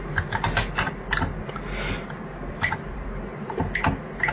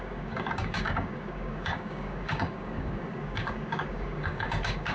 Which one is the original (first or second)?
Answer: first